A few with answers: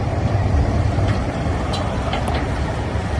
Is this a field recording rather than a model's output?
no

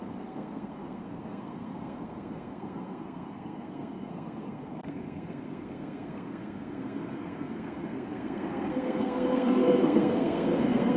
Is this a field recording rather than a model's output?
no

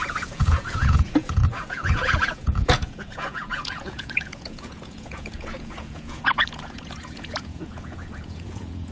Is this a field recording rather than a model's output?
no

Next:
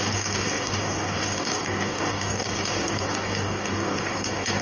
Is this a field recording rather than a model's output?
no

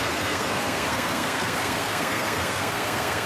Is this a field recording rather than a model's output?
no